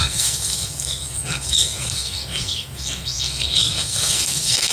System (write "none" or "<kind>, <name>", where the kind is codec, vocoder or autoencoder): codec, SNAC